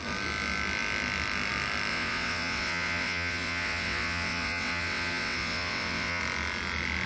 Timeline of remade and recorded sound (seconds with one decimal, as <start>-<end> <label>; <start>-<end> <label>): 0.0-1.9 recorded; 1.9-6.2 remade; 6.2-7.1 recorded